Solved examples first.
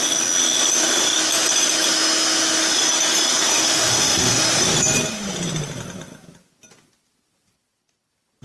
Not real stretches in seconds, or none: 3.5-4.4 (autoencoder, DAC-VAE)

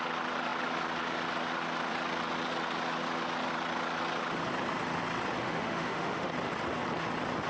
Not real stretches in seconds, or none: 5.4-6.3 (autoencoder, DAC-VAE)